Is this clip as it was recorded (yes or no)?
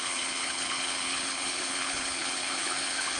no